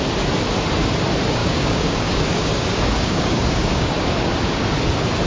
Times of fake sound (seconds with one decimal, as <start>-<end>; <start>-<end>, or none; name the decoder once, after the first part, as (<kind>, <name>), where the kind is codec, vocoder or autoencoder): 1.4-4.6 (codec, DAC)